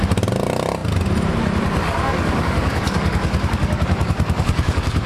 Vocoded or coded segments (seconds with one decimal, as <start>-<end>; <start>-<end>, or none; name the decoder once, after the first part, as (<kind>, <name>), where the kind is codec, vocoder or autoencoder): 1.8-5.1 (codec, DAC)